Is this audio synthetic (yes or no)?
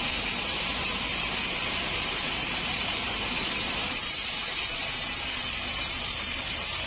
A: yes